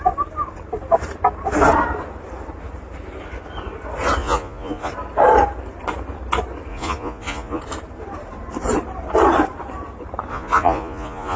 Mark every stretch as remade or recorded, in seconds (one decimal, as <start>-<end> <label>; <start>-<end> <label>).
0.0-4.2 recorded; 4.2-4.9 remade; 4.9-6.7 recorded; 6.7-7.6 remade; 7.6-10.3 recorded; 10.3-11.4 remade